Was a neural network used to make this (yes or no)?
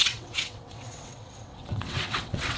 yes